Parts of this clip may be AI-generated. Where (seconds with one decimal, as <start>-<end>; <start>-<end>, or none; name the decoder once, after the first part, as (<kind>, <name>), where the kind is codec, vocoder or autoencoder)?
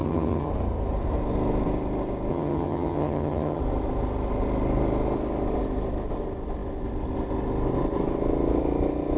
0.0-0.5 (vocoder, HiFi-GAN); 2.3-3.6